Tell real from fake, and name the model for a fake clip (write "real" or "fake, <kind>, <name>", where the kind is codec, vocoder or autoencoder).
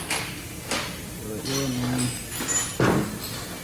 real